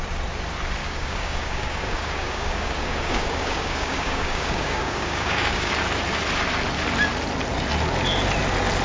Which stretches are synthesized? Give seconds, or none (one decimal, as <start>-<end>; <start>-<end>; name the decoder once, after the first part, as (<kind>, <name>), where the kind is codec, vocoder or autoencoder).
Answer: 0.8-5.7 (codec, DAC)